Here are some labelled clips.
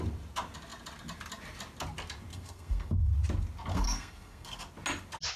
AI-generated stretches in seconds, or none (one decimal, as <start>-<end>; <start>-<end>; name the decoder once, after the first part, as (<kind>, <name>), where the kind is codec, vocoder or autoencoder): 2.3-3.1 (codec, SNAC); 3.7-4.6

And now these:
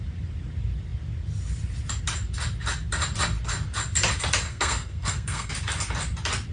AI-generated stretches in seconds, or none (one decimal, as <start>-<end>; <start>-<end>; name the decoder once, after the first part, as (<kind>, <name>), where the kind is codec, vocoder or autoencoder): 4.5-5.5 (codec, SNAC)

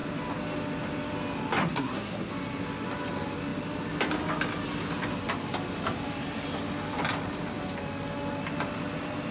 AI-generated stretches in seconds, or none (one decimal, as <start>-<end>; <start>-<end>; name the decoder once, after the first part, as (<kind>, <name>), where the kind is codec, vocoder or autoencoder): 1.6-2.3 (codec, SNAC)

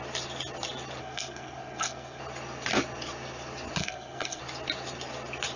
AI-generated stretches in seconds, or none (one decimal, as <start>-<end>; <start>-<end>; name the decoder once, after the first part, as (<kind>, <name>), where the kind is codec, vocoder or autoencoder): 1.0-2.2 (codec, SNAC); 3.8-4.4

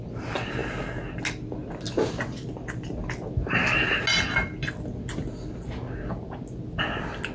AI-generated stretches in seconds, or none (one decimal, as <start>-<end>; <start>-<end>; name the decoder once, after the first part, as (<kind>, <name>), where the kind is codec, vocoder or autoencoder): none